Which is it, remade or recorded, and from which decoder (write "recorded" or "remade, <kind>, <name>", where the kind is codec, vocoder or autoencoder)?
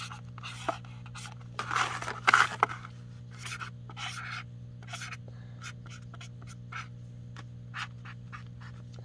recorded